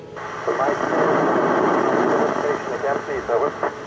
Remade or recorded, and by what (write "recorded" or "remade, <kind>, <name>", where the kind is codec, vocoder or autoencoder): recorded